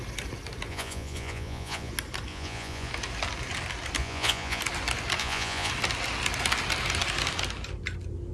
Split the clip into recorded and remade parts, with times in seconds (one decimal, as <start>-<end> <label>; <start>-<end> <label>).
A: 0.0-0.7 recorded; 0.7-1.9 remade; 1.9-2.3 recorded; 2.3-2.9 remade; 2.9-4.0 recorded; 4.0-4.6 remade; 4.6-5.2 recorded; 5.2-5.7 remade; 5.7-8.3 recorded